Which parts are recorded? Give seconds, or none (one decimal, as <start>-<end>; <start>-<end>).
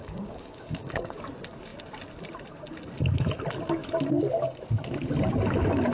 1.2-5.9